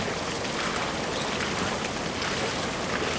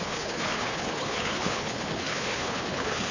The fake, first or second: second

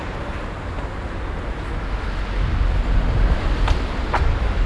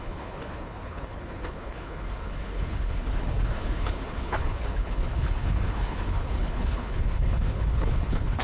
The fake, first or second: second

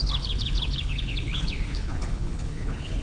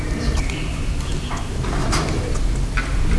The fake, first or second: first